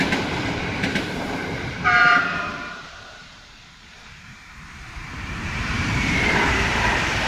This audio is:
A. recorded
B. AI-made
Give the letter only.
B